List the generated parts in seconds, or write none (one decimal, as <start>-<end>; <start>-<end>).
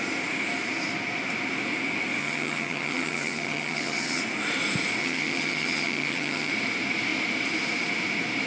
2.2-4.2; 5.0-6.5